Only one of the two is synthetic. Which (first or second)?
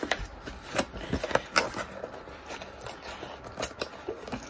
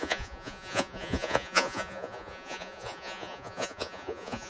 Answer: second